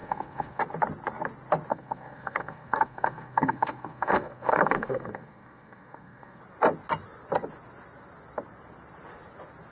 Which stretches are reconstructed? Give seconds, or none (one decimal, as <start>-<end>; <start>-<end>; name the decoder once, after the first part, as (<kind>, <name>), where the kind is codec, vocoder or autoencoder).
0.0-0.6 (codec, SNAC); 1.7-6.4